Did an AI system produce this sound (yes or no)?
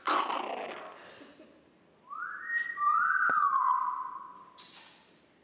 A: no